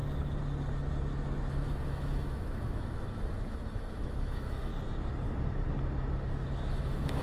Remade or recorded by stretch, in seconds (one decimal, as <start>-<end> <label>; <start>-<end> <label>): 0.0-1.5 recorded; 1.5-4.7 remade; 4.7-6.7 recorded; 6.7-7.2 remade